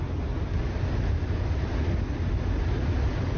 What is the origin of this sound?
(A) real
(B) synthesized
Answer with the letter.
A